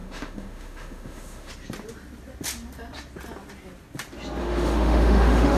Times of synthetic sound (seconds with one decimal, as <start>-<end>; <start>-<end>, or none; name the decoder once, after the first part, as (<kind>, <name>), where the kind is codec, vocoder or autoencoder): 0.0-1.5 (autoencoder, DAC-VAE); 4.4-5.6